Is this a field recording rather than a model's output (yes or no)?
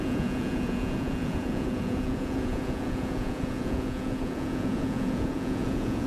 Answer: no